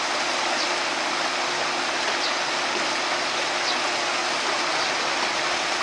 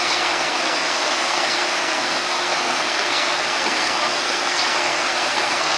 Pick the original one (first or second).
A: first